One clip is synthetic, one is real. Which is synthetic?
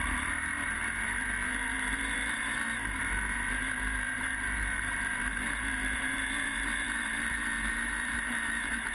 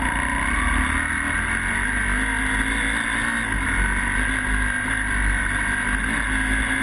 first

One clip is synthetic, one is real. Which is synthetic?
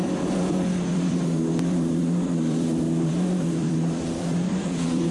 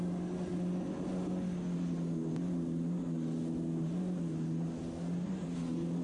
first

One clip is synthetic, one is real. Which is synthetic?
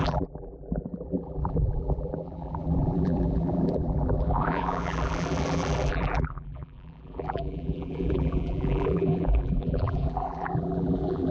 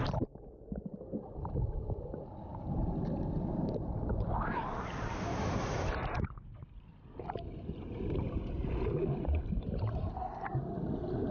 first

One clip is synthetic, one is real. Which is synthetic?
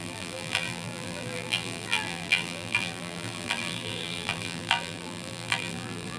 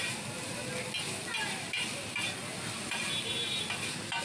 first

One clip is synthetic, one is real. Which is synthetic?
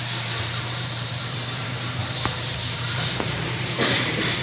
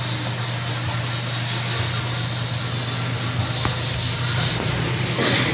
first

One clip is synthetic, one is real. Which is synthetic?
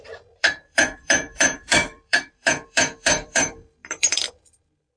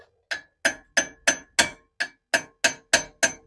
first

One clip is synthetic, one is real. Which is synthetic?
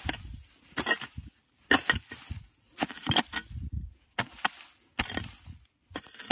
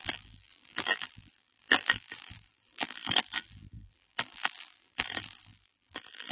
second